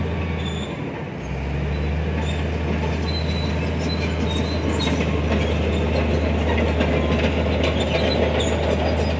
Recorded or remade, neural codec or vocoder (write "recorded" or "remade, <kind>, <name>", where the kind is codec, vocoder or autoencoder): recorded